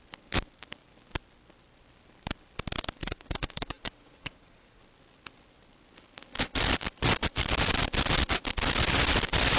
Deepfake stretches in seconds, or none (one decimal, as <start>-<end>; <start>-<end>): 3.0-4.8